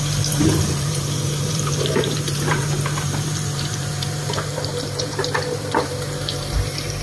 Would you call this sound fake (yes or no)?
yes